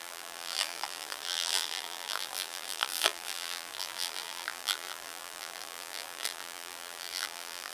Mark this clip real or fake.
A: fake